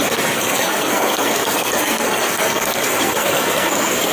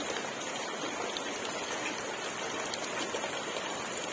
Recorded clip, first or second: second